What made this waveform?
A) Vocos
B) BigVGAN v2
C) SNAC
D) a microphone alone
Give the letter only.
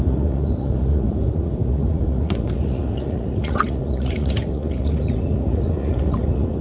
A